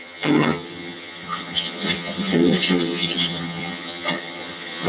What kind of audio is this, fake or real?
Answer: fake